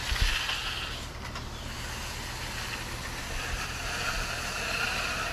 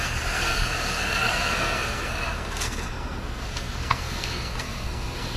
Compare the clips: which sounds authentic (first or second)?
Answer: first